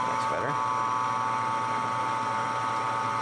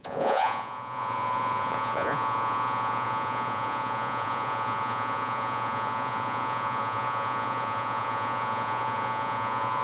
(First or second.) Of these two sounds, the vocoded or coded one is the second